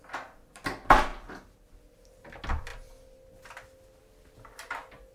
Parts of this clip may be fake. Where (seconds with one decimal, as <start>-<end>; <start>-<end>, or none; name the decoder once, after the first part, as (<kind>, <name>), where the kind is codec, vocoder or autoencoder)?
none